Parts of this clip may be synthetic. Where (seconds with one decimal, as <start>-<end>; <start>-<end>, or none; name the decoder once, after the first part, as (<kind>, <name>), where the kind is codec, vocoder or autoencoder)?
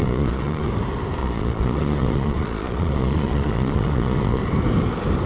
0.0-0.7 (vocoder, Vocos); 1.2-4.4